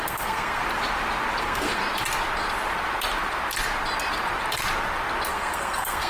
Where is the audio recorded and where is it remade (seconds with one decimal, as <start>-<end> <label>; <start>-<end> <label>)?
0.0-0.6 remade; 0.6-1.4 recorded; 1.4-1.8 remade; 1.8-5.3 recorded; 5.3-6.1 remade